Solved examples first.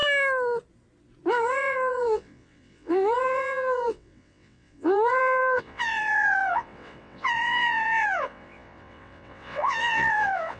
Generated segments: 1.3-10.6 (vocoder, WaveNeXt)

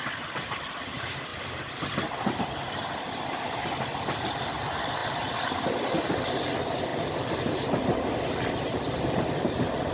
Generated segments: none

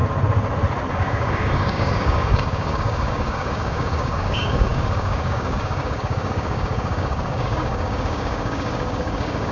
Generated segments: 0.9-9.5 (codec, DAC)